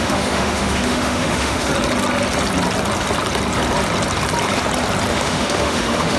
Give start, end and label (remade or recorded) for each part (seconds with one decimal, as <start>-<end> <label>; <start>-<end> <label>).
0.0-1.7 remade; 1.7-5.1 recorded; 5.1-6.2 remade